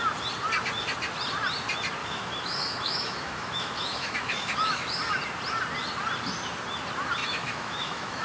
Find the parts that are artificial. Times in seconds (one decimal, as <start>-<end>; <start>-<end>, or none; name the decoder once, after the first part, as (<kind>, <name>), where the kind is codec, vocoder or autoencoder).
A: 2.0-4.9 (autoencoder, DAC-VAE); 7.2-8.2